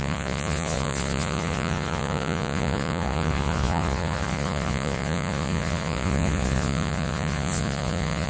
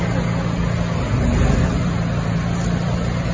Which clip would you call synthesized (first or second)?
first